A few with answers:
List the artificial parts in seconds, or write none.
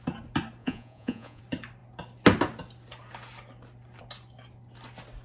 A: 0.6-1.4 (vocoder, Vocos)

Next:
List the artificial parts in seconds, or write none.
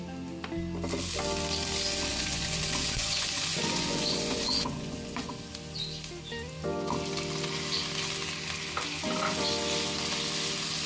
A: 2.1-5.3 (vocoder, Vocos)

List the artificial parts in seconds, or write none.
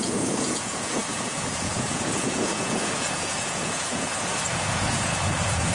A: 0.0-5.7 (vocoder, Vocos)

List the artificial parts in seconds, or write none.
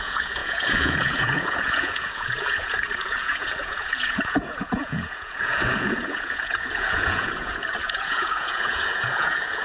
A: 0.0-9.6 (vocoder, Vocos)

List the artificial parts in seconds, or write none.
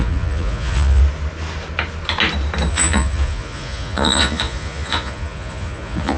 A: 0.0-1.0 (vocoder, Vocos); 2.7-6.2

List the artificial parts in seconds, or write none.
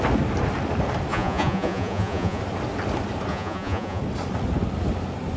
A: 1.1-2.4 (vocoder, Vocos); 3.3-4.0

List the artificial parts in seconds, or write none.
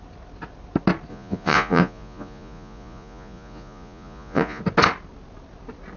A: 1.1-4.6 (vocoder, Vocos)